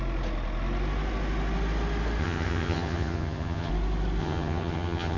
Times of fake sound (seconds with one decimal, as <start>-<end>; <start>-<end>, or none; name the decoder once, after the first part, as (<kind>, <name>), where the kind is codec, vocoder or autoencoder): 2.2-3.7 (vocoder, HiFi-GAN); 4.2-5.2